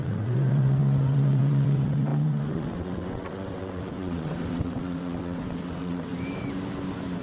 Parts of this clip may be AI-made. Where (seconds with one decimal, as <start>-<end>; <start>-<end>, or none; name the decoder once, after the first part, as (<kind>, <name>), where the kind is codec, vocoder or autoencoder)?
0.0-6.1 (vocoder, WaveNeXt)